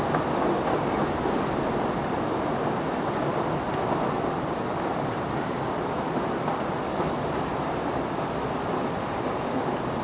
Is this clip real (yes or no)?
yes